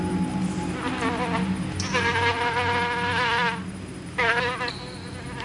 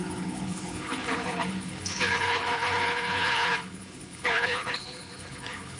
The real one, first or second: first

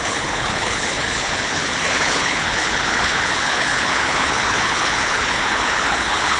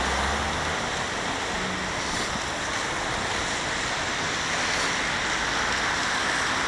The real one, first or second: second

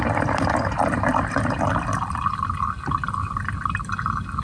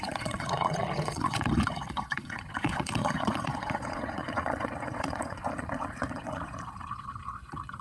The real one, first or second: first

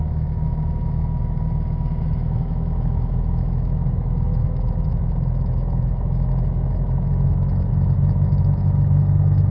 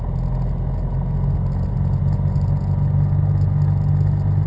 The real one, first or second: second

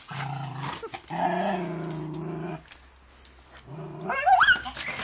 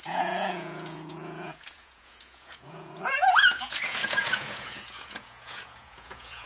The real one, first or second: first